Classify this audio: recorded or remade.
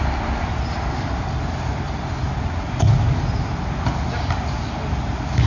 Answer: recorded